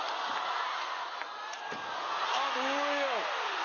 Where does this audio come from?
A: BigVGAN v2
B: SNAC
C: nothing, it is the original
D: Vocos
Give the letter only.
C